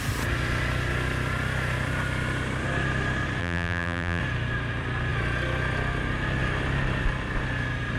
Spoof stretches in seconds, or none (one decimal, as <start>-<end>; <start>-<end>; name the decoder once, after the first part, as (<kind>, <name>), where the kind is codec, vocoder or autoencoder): 3.4-4.2 (vocoder, BigVGAN v2)